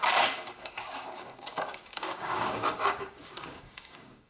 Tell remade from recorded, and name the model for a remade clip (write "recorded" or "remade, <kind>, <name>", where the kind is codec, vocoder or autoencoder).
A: remade, codec, DAC